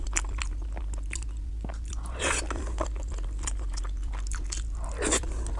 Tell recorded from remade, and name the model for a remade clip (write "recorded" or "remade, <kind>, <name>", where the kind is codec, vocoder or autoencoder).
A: recorded